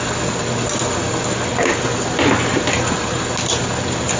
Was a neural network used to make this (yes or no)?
no